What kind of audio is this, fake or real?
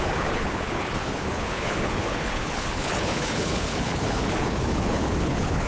fake